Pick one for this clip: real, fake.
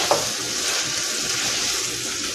real